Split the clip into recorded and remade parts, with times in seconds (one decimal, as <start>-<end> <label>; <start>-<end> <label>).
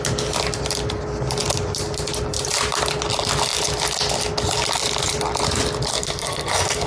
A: 0.0-5.9 recorded; 5.9-6.9 remade